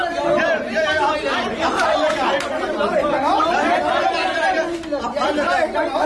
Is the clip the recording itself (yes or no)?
yes